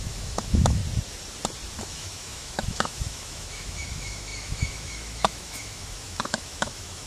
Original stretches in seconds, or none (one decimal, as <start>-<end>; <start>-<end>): 0.8-1.8